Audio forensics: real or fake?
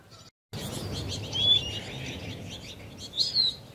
real